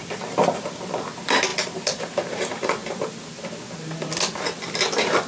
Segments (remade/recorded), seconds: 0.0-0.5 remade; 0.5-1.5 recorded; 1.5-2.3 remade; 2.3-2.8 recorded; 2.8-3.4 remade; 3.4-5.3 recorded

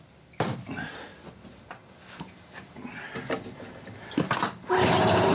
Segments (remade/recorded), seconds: 0.0-5.3 remade

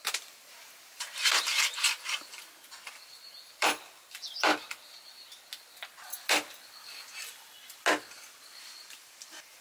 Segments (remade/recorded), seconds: 0.0-1.5 remade; 1.5-2.9 recorded; 2.9-4.5 remade; 4.5-8.7 recorded; 8.7-9.6 remade

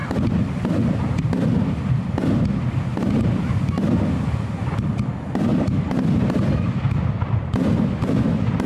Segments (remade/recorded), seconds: 0.0-1.9 remade; 1.9-2.9 recorded; 2.9-3.5 remade; 3.5-5.5 recorded; 5.5-6.8 remade; 6.8-8.7 recorded

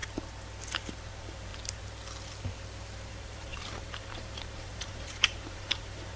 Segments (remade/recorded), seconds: 0.0-1.1 recorded; 1.1-1.5 remade; 1.5-3.1 recorded; 3.1-6.2 remade

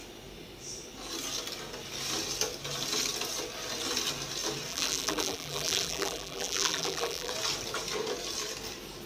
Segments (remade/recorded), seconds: 0.0-4.7 recorded; 4.7-7.3 remade; 7.3-9.1 recorded